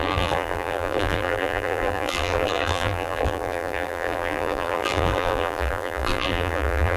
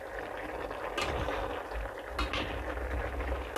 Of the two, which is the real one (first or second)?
second